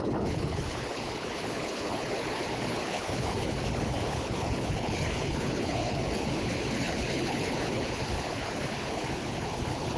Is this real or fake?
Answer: fake